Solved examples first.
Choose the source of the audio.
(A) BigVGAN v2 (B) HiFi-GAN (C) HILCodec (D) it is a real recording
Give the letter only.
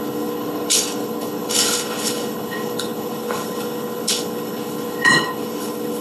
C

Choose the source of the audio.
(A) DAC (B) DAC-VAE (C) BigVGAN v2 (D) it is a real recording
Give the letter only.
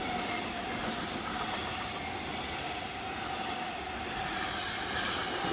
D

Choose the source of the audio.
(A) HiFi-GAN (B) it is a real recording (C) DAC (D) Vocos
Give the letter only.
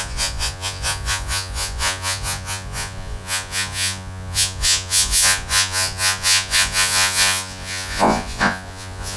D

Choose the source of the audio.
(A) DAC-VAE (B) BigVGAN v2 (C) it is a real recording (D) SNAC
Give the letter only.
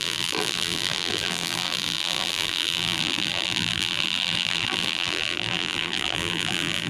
B